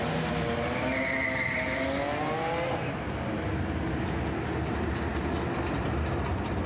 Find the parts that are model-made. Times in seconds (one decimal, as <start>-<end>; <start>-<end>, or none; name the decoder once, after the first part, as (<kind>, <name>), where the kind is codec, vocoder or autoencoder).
none